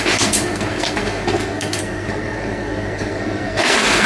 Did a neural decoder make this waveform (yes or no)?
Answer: yes